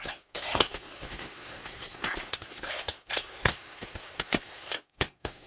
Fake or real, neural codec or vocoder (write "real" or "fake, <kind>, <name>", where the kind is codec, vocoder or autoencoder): fake, codec, SNAC